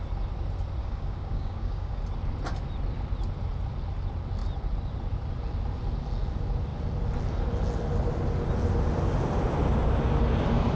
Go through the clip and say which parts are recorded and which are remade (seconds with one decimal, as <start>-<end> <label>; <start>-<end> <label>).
0.0-0.8 recorded; 0.8-2.0 remade; 2.0-10.8 recorded